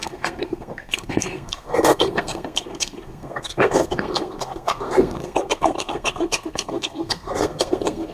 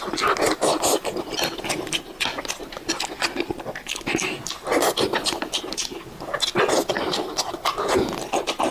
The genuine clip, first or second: second